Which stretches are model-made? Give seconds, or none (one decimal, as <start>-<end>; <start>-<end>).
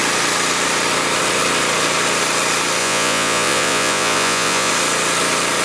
2.8-4.7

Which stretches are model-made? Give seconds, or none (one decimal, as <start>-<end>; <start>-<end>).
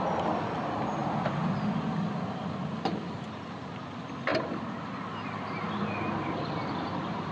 none